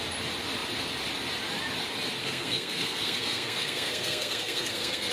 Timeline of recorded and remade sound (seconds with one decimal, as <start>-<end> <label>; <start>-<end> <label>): 0.0-2.2 recorded; 2.2-5.1 remade